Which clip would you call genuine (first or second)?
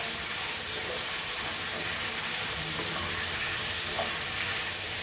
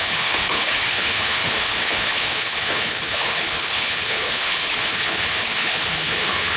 first